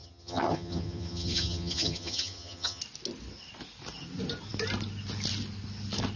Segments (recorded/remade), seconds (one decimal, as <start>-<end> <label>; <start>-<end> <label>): 0.0-2.8 remade; 2.8-6.2 recorded